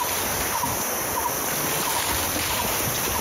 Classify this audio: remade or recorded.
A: recorded